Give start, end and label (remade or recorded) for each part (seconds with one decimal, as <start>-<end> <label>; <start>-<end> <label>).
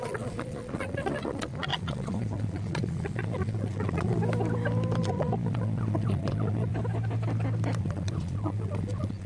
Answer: 0.0-4.2 remade; 4.2-5.0 recorded; 5.0-6.7 remade; 6.7-7.8 recorded; 7.8-9.3 remade